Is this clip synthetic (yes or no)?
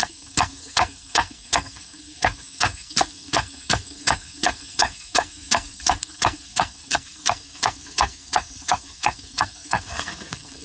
yes